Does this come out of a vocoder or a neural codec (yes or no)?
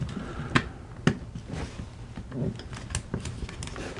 no